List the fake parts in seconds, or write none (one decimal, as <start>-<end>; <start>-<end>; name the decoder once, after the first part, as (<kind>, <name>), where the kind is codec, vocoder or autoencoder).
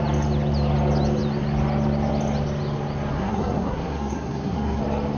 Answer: 3.1-4.8 (codec, SNAC)